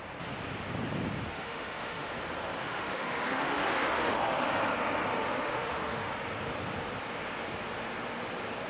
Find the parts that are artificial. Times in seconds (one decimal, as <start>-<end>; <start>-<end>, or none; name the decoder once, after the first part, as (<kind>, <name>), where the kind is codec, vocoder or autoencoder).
1.3-2.1 (autoencoder, DAC-VAE); 2.6-4.5; 5.2-6.1